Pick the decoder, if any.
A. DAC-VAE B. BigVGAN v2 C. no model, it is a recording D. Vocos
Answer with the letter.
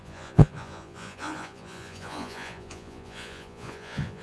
D